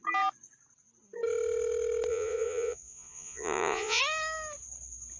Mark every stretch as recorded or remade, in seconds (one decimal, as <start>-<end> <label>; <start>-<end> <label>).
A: 0.0-2.1 recorded; 2.1-4.0 remade; 4.0-5.2 recorded